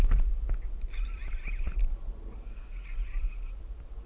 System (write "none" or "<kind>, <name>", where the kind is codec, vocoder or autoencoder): none